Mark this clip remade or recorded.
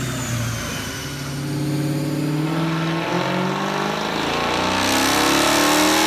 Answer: recorded